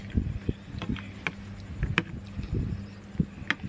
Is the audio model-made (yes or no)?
no